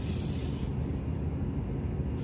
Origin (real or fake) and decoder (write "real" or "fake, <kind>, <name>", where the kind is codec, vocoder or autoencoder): real